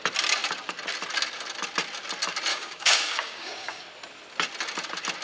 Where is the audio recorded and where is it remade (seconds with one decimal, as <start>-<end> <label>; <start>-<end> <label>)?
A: 0.0-2.5 recorded; 2.5-3.8 remade; 3.8-5.2 recorded